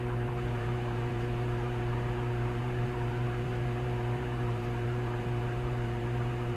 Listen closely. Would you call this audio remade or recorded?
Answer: remade